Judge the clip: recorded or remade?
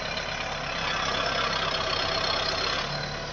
recorded